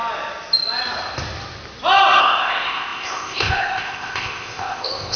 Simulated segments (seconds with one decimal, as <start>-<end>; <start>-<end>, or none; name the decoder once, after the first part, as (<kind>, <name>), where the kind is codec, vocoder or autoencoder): 2.2-5.2 (codec, ZipCodec)

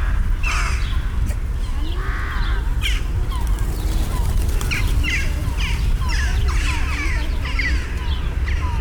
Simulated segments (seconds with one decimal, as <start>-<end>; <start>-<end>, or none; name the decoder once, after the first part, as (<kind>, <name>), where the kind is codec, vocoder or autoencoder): none